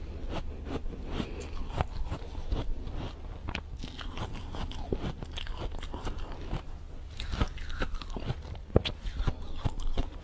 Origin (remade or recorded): recorded